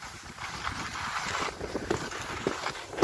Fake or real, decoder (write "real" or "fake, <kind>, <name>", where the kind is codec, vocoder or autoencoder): real